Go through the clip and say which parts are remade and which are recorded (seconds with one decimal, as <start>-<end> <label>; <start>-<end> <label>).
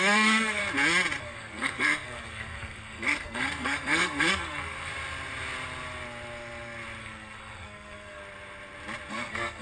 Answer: 0.0-0.6 remade; 0.6-1.2 recorded; 1.2-4.9 remade; 4.9-7.0 recorded; 7.0-8.2 remade; 8.2-9.1 recorded; 9.1-9.6 remade